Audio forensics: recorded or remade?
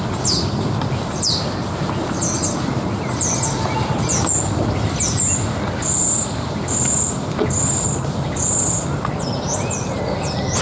recorded